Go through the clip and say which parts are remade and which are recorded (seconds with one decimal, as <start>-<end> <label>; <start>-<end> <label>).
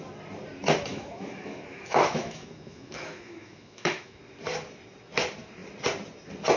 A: 0.0-0.9 recorded; 0.9-4.2 remade; 4.2-6.6 recorded